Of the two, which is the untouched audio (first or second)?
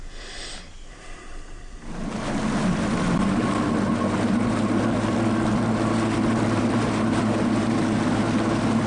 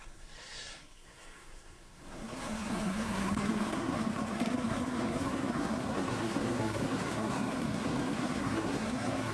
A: first